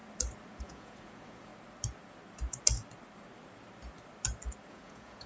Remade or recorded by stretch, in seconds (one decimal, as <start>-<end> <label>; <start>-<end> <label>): 0.0-0.6 recorded; 0.6-1.5 remade; 1.5-4.7 recorded; 4.7-5.3 remade